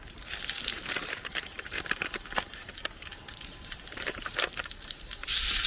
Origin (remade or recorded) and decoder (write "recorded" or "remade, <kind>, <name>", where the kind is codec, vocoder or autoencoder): remade, vocoder, BigVGAN v2